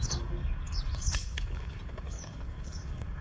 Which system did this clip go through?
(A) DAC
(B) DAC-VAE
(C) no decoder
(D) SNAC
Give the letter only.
A